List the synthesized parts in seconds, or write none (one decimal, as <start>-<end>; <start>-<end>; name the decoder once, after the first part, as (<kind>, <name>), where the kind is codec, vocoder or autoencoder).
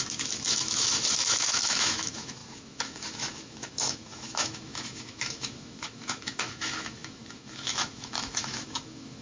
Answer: 0.0-9.2 (autoencoder, DAC-VAE)